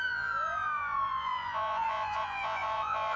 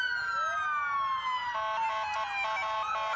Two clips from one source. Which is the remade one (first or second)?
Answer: first